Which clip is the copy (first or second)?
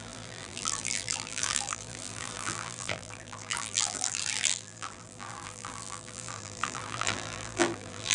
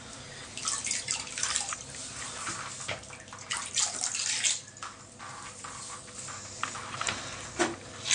first